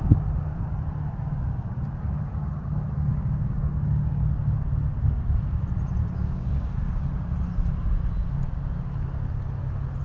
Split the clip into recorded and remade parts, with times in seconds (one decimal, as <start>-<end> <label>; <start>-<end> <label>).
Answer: 0.0-3.1 recorded; 3.1-4.1 remade; 4.1-6.0 recorded; 6.0-6.9 remade; 6.9-10.0 recorded

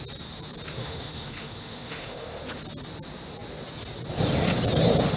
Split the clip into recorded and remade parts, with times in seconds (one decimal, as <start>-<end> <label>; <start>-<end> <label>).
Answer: 0.0-0.8 recorded; 0.8-2.4 remade; 2.4-5.2 recorded

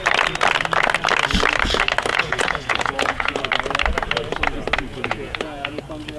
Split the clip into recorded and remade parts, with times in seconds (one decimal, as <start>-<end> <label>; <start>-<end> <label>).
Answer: 0.0-2.1 recorded; 2.1-3.4 remade; 3.4-4.9 recorded; 4.9-5.8 remade; 5.8-6.2 recorded

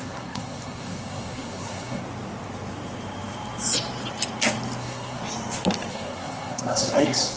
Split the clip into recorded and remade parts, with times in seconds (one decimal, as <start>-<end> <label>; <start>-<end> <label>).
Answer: 0.0-2.0 remade; 2.0-4.8 recorded; 4.8-5.2 remade; 5.2-5.9 recorded; 5.9-7.4 remade

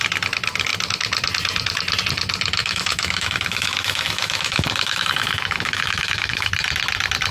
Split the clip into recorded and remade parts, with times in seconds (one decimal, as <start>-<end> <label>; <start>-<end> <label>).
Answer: 0.0-2.6 recorded; 2.6-6.5 remade; 6.5-7.3 recorded